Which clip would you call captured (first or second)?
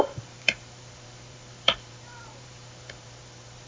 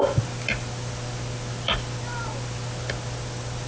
second